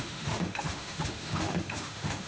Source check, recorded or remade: remade